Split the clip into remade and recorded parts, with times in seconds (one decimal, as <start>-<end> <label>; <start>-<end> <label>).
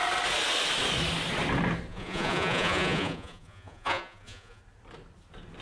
0.0-1.9 recorded; 1.9-4.6 remade; 4.6-5.6 recorded